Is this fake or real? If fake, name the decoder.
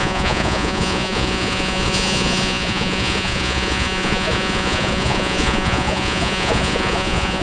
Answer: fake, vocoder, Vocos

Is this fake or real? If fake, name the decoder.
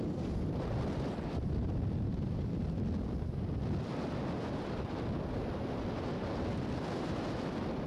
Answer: real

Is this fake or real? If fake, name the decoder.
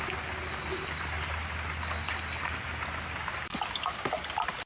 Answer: real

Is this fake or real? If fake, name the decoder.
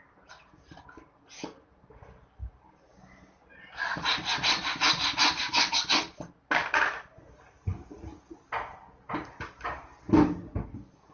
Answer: real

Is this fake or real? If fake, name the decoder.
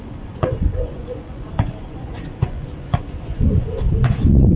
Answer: fake, vocoder, Vocos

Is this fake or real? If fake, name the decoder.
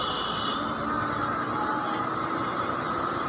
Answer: real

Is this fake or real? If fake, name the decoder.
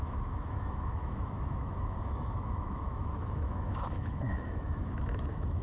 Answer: fake, autoencoder, DAC-VAE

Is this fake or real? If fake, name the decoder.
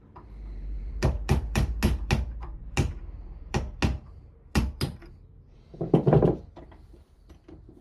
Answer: fake, vocoder, BigVGAN v2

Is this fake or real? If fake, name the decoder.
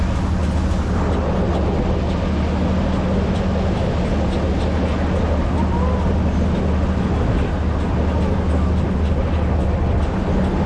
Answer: real